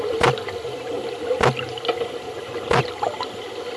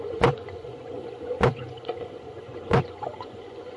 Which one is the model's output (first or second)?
second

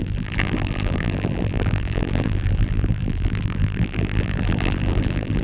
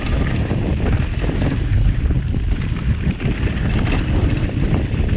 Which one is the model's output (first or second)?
first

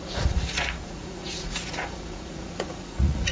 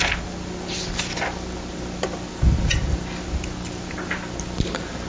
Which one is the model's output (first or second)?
first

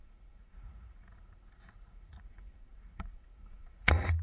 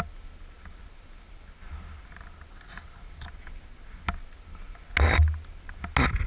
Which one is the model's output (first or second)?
first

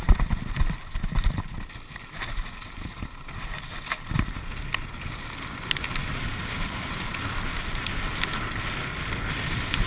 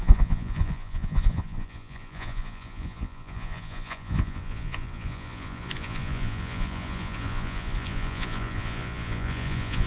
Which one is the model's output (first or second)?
second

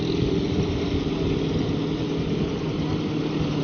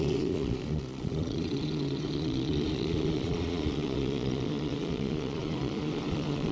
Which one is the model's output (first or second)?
second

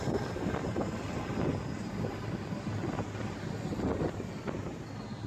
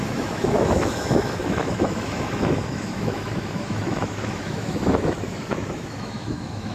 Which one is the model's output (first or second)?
second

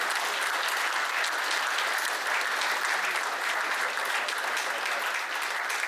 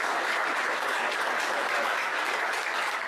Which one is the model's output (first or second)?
second